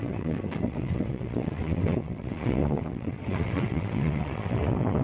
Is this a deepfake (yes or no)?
yes